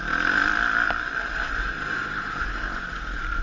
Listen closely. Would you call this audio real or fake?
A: real